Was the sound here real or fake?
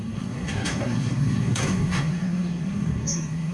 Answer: fake